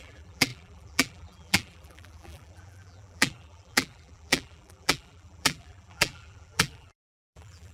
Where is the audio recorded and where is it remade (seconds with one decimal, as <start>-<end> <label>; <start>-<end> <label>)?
0.0-7.7 remade